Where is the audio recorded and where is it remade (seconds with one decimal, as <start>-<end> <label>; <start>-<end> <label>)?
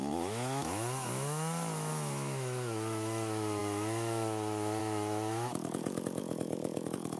0.0-7.2 remade